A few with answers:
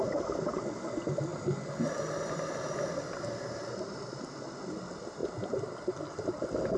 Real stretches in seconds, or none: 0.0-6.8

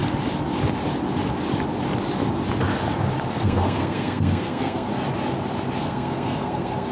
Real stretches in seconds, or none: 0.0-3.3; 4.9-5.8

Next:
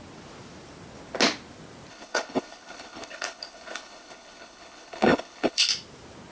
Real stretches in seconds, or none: 0.0-1.9; 5.7-6.3

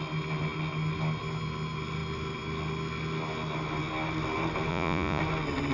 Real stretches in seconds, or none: 0.0-4.7; 5.2-5.7

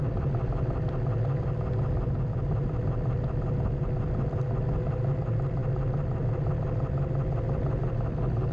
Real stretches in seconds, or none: 0.0-8.5

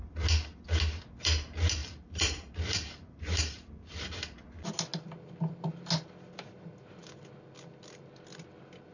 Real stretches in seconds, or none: 0.0-1.8; 4.2-8.9

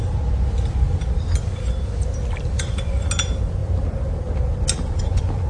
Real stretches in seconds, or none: 0.0-5.5

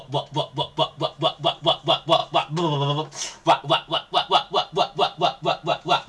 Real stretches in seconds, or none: 0.0-6.1